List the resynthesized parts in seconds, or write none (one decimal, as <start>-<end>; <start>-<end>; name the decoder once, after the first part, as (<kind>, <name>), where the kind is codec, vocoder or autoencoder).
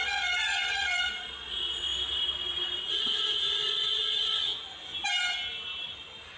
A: 0.0-1.9 (vocoder, Vocos); 2.8-4.5